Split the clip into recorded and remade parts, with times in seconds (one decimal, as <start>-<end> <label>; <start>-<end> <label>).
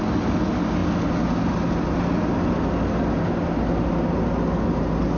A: 0.0-5.2 recorded